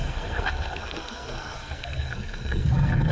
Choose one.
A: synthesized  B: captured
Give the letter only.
A